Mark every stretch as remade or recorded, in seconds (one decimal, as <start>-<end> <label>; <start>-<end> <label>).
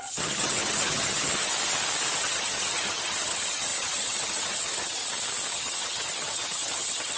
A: 0.0-1.5 remade; 1.5-2.1 recorded; 2.1-5.0 remade; 5.0-5.5 recorded; 5.5-7.2 remade